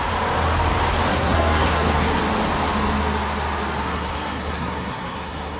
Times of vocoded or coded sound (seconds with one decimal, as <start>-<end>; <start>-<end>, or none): 1.1-2.2; 3.8-5.6